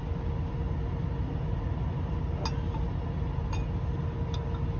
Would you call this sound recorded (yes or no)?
yes